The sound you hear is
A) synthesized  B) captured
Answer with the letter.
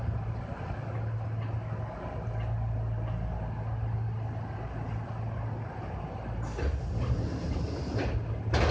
B